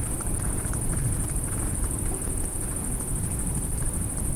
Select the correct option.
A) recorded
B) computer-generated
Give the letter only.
B